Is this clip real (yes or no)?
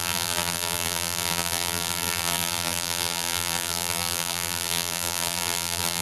no